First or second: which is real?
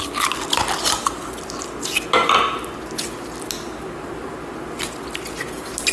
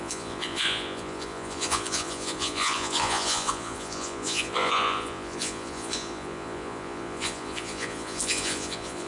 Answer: first